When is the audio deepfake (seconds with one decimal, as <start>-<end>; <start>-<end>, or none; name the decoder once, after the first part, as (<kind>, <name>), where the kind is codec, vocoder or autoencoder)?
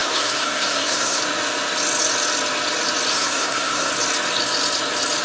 0.0-1.2 (codec, SNAC); 3.1-3.9